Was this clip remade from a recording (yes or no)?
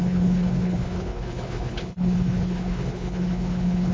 yes